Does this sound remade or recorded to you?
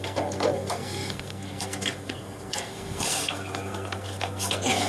remade